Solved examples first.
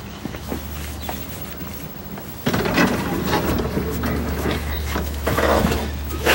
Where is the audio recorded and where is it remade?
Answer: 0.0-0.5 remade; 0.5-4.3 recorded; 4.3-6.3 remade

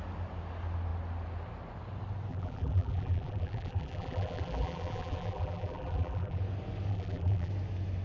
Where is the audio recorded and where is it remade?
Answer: 0.0-2.3 recorded; 2.3-6.4 remade; 6.4-6.9 recorded; 6.9-7.5 remade; 7.5-8.0 recorded

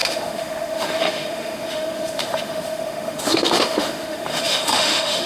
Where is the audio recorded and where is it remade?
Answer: 0.0-5.3 remade

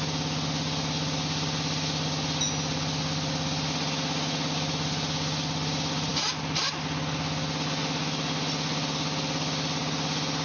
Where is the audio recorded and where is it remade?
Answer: 0.0-10.4 recorded

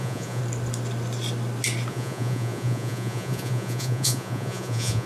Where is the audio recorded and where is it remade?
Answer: 0.0-0.4 remade; 0.4-1.9 recorded; 1.9-5.1 remade